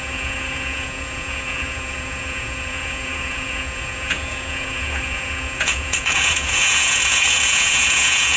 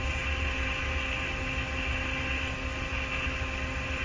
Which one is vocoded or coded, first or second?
first